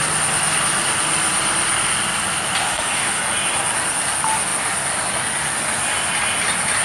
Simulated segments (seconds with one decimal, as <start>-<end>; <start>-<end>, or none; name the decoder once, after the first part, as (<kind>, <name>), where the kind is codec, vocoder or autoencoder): 2.6-3.2 (autoencoder, DAC-VAE)